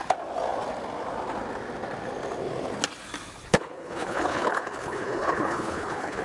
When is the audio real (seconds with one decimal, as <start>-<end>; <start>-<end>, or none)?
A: 0.0-3.5